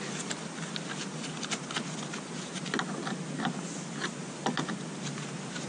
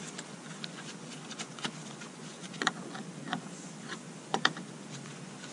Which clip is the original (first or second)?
first